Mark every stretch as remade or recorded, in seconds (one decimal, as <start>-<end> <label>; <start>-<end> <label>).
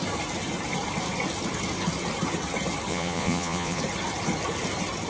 0.0-2.9 recorded; 2.9-3.8 remade; 3.8-5.1 recorded